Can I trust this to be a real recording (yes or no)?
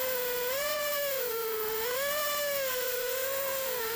no